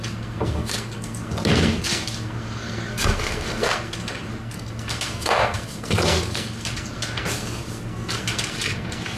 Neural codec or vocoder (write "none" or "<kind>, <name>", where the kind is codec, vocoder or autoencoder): codec, SNAC